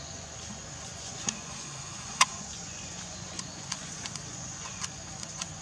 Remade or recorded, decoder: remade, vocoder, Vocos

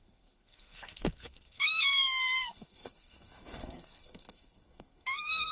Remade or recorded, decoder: remade, codec, SNAC